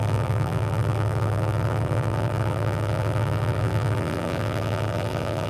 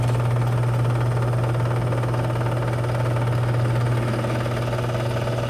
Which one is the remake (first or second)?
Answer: first